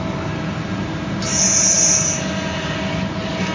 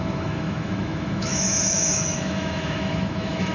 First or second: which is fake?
second